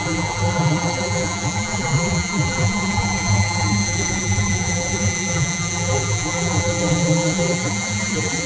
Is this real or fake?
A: fake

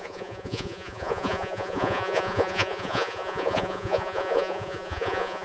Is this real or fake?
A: fake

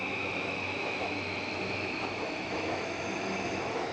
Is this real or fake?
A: fake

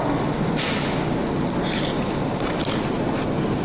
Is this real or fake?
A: real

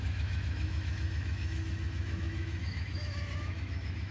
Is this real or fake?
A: fake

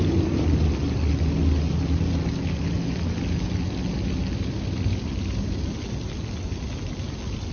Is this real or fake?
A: real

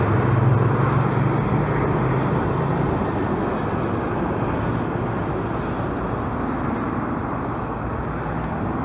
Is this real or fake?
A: real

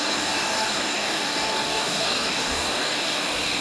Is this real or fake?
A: fake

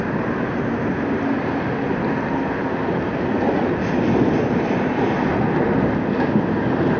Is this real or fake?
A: real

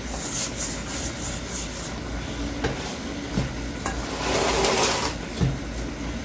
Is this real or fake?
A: real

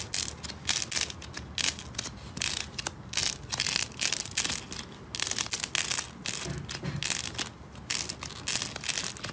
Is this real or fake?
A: real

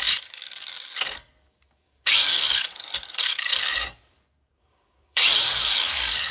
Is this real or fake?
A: fake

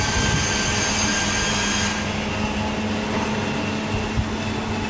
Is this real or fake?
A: real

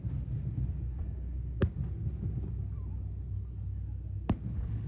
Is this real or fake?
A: real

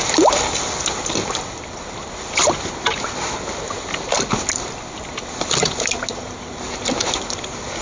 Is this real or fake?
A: real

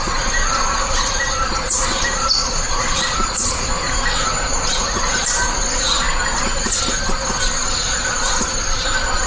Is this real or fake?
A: real